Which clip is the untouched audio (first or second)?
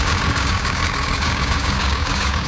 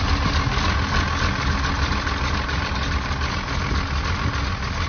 second